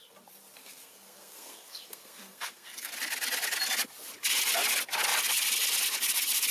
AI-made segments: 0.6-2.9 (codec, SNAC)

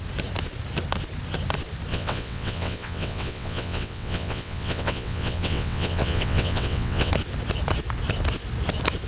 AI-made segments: 1.9-7.1 (vocoder, WaveNeXt)

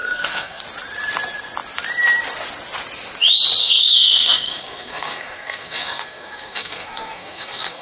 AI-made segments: 0.0-0.6 (codec, SNAC); 3.6-7.8

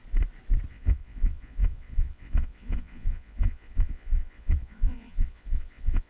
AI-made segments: 0.7-6.1 (vocoder, Vocos)

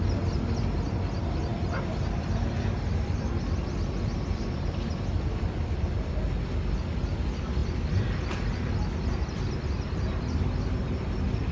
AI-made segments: 1.5-6.1 (vocoder, BigVGAN v2); 7.6-11.5

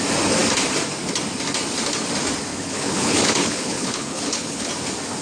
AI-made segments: 2.5-4.7 (codec, HILCodec)